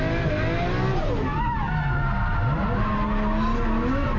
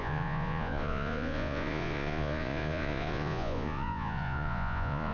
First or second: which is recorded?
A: first